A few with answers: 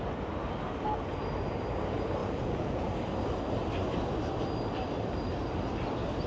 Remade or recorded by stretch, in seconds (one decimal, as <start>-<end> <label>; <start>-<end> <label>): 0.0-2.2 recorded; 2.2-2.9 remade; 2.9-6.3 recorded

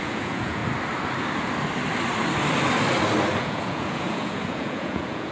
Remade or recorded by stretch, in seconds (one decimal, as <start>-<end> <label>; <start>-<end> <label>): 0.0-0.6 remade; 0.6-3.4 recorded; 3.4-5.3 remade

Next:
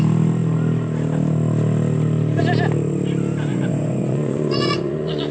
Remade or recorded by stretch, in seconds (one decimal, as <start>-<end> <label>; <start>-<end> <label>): 0.0-3.5 recorded; 3.5-5.3 remade

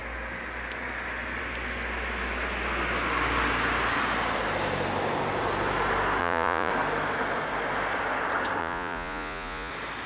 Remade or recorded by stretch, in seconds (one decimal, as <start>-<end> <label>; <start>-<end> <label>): 0.0-6.2 recorded; 6.2-6.7 remade; 6.7-8.6 recorded; 8.6-9.7 remade; 9.7-10.1 recorded

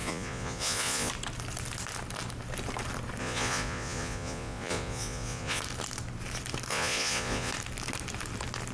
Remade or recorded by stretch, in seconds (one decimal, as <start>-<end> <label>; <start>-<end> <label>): 0.0-1.1 remade; 1.1-3.2 recorded; 3.2-5.6 remade; 5.6-6.7 recorded; 6.7-7.5 remade; 7.5-8.7 recorded